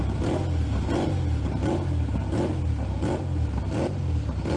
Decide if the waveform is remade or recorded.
recorded